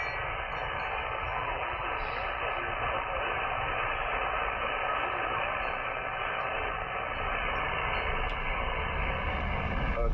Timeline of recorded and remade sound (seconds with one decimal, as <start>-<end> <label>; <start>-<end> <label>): 0.0-1.3 recorded; 1.3-1.9 remade; 1.9-10.1 recorded